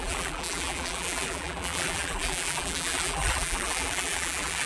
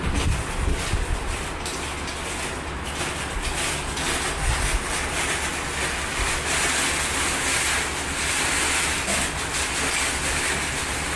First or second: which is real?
second